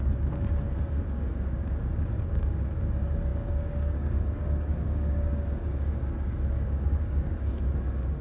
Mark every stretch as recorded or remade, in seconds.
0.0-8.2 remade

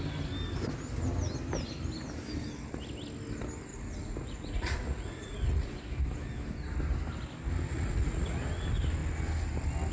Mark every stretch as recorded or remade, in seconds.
0.0-3.7 recorded; 3.7-5.7 remade; 5.7-7.7 recorded; 7.7-8.5 remade; 8.5-9.9 recorded

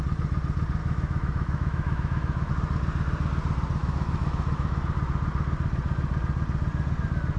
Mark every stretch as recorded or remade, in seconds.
0.0-0.8 recorded; 0.8-2.5 remade; 2.5-3.8 recorded; 3.8-4.8 remade; 4.8-7.4 recorded

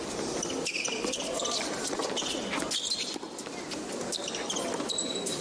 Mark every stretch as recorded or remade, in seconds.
0.0-5.4 recorded

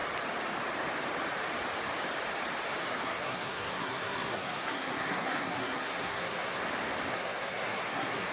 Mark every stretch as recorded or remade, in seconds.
0.0-2.8 recorded; 2.8-6.6 remade; 6.6-7.1 recorded; 7.1-8.3 remade

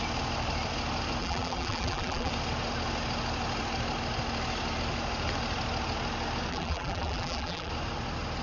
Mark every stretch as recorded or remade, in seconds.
0.0-1.2 recorded; 1.2-2.3 remade; 2.3-6.5 recorded; 6.5-7.7 remade; 7.7-8.4 recorded

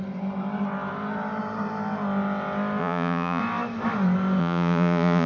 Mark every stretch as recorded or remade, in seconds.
0.0-2.8 recorded; 2.8-3.4 remade; 3.4-4.4 recorded; 4.4-5.3 remade

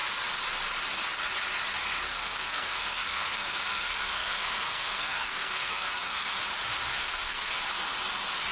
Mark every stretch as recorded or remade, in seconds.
0.0-2.1 recorded; 2.1-6.4 remade; 6.4-6.9 recorded; 6.9-7.6 remade; 7.6-8.5 recorded